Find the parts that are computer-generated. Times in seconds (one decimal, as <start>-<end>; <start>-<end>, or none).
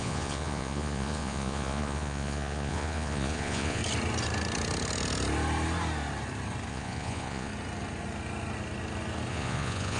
0.0-3.8; 6.7-7.5; 9.3-10.0